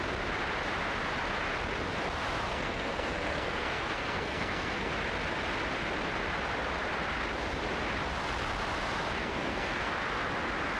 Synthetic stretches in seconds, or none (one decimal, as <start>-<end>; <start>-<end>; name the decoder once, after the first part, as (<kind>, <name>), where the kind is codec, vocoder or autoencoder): 2.5-4.9 (codec, SNAC); 9.2-9.9